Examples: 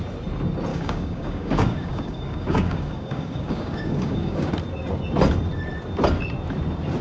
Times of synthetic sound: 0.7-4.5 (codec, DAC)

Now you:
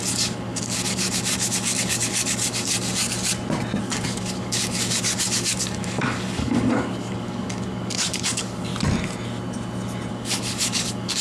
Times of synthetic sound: 0.0-2.9 (codec, DAC); 3.8-8.7; 10.1-11.2

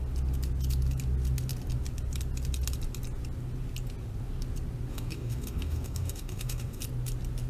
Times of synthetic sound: 4.9-6.8 (codec, DAC)

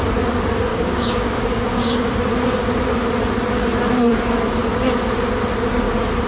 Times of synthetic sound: 0.7-2.1 (codec, DAC)

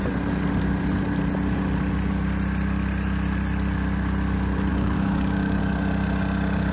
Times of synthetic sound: 4.7-5.6 (codec, DAC)

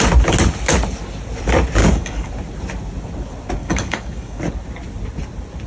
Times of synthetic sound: 1.8-2.3 (codec, DAC); 3.6-4.4